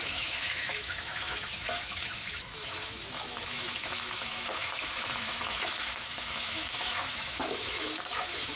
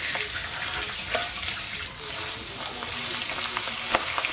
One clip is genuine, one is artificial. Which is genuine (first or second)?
second